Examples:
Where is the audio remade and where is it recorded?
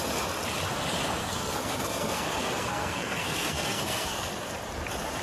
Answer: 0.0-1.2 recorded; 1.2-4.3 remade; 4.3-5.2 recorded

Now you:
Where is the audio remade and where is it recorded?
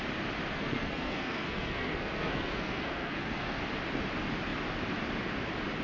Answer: 0.0-0.5 recorded; 0.5-3.6 remade; 3.6-5.8 recorded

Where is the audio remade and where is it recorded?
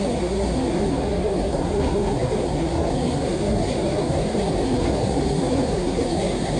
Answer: 0.0-6.6 remade